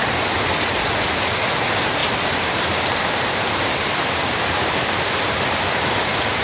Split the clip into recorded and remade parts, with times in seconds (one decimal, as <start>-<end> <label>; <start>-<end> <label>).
0.0-2.0 recorded; 2.0-5.8 remade; 5.8-6.4 recorded